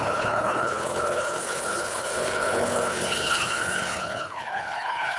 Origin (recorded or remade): remade